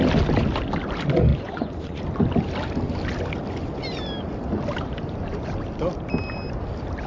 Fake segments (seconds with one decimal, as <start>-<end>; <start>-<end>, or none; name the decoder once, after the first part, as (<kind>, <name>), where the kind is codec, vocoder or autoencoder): 1.3-2.0 (vocoder, Vocos)